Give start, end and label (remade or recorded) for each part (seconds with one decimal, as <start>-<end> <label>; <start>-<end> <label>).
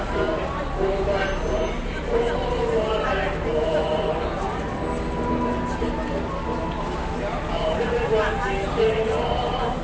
0.0-9.8 recorded